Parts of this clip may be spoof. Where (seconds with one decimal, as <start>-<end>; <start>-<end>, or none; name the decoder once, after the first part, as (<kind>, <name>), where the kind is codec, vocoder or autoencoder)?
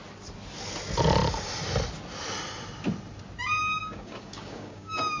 3.6-5.2 (codec, DAC)